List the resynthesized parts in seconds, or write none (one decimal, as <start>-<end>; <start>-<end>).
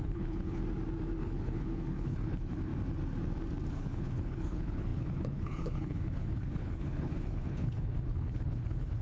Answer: 0.0-0.6; 1.2-2.7; 3.7-9.0